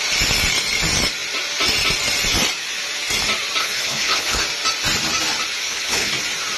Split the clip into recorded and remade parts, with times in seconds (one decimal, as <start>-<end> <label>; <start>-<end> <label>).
0.0-3.6 recorded; 3.6-4.4 remade; 4.4-5.6 recorded; 5.6-6.1 remade; 6.1-6.6 recorded

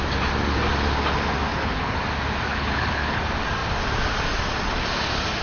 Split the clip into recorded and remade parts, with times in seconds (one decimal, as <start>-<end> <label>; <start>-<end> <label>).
0.0-1.5 recorded; 1.5-2.0 remade; 2.0-2.5 recorded; 2.5-3.2 remade; 3.2-5.4 recorded

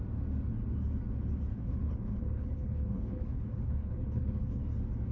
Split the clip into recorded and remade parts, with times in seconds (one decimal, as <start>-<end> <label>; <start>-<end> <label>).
0.0-1.5 recorded; 1.5-4.6 remade; 4.6-5.1 recorded